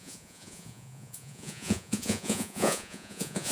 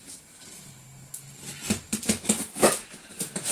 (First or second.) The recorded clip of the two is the second